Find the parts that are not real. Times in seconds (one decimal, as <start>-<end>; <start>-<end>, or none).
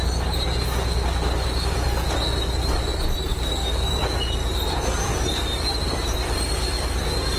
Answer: 3.3-4.2